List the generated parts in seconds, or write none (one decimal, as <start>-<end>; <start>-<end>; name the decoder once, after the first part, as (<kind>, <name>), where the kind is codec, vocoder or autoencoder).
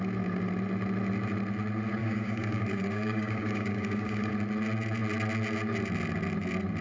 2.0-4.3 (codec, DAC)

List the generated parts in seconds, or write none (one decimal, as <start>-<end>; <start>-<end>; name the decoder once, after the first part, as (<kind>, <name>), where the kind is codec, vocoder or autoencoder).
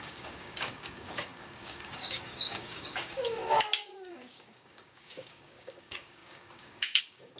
0.0-7.4 (codec, DAC)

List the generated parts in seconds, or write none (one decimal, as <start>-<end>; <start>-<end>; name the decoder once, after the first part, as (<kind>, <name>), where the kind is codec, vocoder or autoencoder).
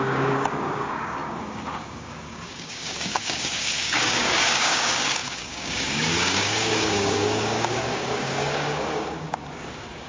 0.0-10.1 (codec, DAC)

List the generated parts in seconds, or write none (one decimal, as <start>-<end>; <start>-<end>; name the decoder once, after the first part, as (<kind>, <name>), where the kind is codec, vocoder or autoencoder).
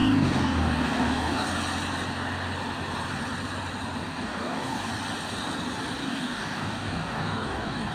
0.0-1.5 (codec, DAC); 4.0-4.9; 6.0-7.9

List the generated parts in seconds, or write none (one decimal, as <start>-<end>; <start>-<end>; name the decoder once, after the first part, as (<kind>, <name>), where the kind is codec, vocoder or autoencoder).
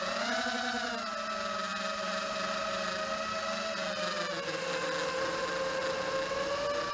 none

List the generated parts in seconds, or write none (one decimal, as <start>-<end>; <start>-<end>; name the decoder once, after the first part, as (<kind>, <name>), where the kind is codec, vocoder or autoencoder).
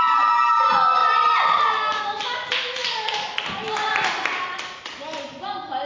none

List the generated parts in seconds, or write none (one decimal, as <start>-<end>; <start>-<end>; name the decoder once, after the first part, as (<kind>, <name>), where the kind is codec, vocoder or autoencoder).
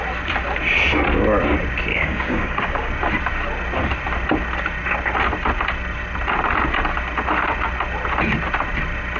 1.9-2.9 (codec, DAC)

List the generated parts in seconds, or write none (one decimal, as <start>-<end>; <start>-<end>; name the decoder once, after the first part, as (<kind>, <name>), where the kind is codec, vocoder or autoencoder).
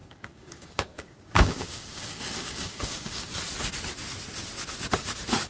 0.0-3.3 (codec, DAC)